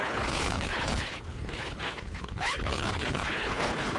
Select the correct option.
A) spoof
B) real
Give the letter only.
A